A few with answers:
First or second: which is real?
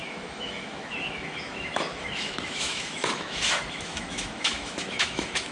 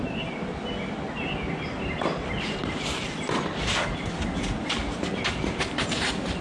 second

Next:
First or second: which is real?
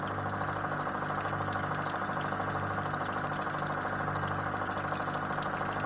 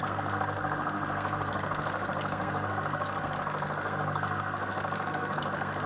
first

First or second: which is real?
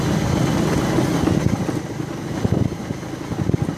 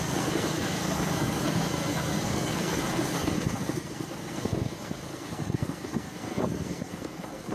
first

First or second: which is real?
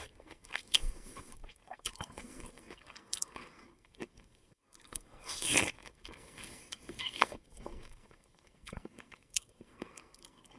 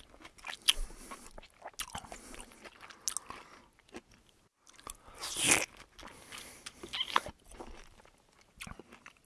second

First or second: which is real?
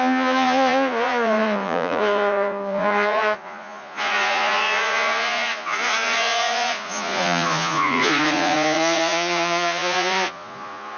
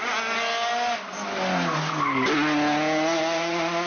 second